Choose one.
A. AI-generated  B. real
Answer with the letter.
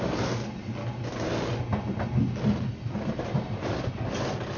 B